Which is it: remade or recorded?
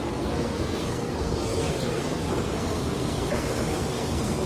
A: remade